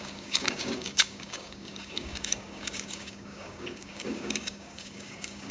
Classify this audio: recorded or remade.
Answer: remade